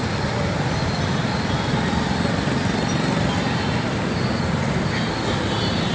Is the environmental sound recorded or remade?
recorded